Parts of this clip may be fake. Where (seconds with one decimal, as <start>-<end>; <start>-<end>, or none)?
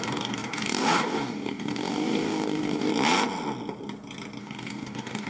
0.0-2.9; 4.4-5.3